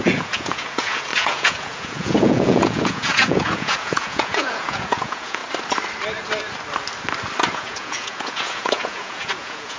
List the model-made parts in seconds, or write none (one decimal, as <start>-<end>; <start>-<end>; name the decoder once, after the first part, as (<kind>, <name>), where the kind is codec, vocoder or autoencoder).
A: 0.0-5.4 (vocoder, Vocos); 7.5-9.8